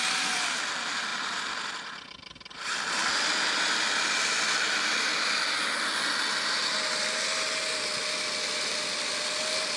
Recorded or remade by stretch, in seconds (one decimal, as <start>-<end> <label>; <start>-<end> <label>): 0.0-9.8 recorded